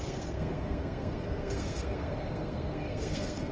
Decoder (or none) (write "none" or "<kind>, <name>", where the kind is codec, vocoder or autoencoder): codec, SNAC